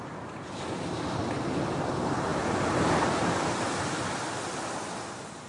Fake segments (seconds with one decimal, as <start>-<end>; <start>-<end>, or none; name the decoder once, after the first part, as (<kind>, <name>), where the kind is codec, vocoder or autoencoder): none

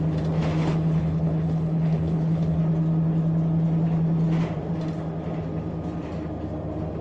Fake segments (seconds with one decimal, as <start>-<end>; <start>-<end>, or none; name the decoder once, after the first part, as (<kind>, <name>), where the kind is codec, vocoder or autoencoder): 0.6-2.6 (codec, HILCodec)